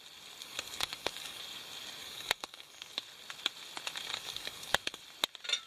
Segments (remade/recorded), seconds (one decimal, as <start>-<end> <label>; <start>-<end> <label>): 0.0-0.4 recorded; 0.4-1.4 remade; 1.4-2.0 recorded; 2.0-2.9 remade; 2.9-4.1 recorded; 4.1-5.0 remade; 5.0-5.7 recorded